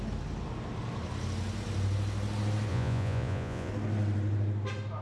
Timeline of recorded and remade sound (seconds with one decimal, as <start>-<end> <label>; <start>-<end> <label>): 0.0-2.7 recorded; 2.7-3.7 remade; 3.7-5.0 recorded